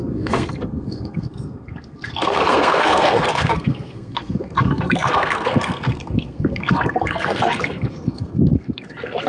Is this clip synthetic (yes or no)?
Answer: yes